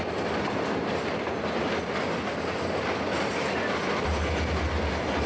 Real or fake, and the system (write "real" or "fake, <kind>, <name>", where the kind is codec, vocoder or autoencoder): real